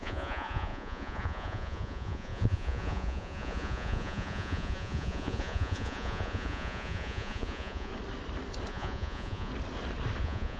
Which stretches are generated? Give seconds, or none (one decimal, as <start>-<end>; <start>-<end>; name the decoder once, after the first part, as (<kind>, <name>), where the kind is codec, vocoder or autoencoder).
0.0-7.9 (vocoder, Vocos); 8.7-9.5; 10.2-10.6